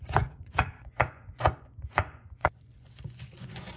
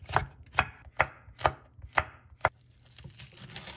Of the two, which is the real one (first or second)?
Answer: second